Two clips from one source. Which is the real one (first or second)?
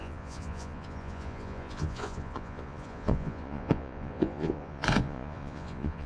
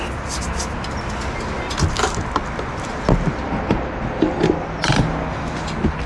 second